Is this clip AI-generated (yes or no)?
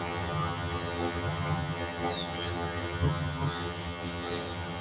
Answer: yes